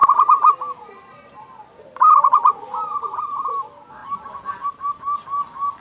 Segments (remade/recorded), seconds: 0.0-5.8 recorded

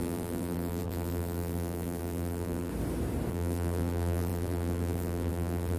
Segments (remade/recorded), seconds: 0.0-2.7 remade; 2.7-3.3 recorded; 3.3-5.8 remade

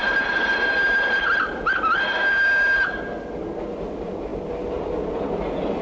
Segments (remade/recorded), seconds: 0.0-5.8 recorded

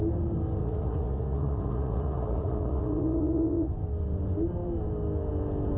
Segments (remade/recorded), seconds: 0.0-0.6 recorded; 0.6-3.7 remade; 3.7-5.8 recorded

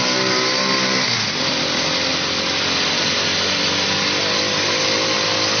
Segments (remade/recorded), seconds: 0.0-5.6 recorded

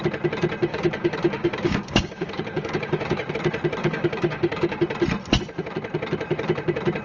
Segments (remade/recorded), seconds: 0.0-0.7 recorded; 0.7-3.3 remade; 3.3-3.8 recorded; 3.8-4.8 remade; 4.8-7.0 recorded